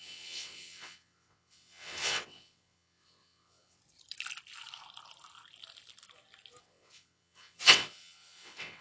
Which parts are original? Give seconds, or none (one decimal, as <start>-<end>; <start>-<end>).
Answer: 3.8-6.6